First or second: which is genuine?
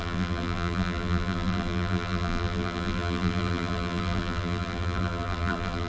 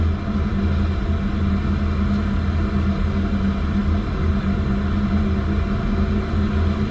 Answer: second